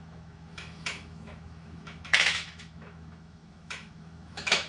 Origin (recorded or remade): remade